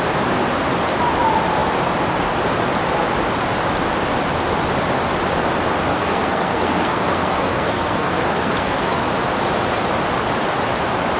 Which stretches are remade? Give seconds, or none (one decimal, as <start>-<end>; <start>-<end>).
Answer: 5.9-9.0